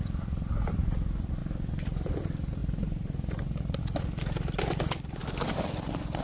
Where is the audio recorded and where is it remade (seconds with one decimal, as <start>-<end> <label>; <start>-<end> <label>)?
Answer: 0.0-1.4 recorded; 1.4-2.1 remade; 2.1-2.6 recorded; 2.6-3.8 remade; 3.8-6.2 recorded